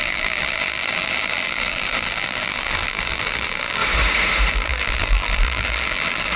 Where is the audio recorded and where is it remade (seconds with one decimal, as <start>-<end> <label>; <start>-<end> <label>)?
0.0-3.8 remade; 3.8-4.5 recorded; 4.5-6.4 remade